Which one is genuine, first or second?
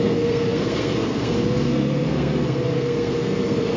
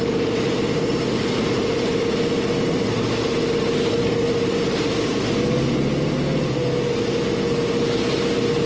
second